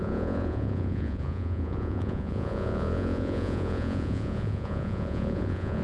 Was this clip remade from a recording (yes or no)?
yes